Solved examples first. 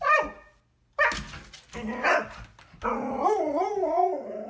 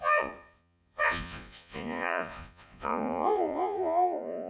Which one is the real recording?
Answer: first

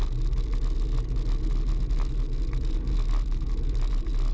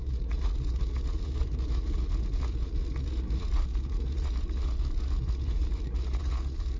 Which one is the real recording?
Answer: first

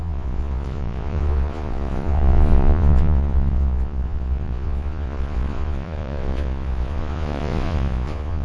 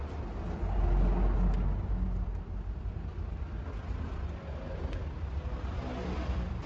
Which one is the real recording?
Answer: second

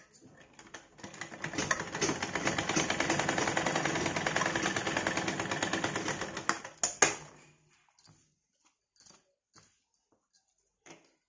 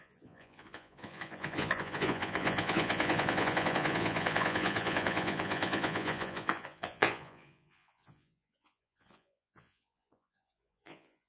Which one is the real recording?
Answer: first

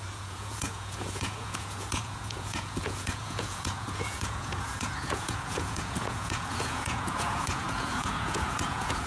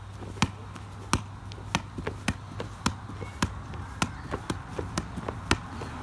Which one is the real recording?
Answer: second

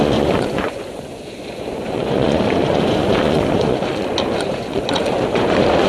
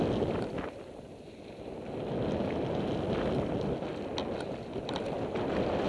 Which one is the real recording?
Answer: second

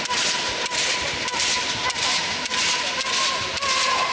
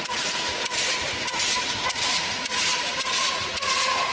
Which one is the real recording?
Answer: first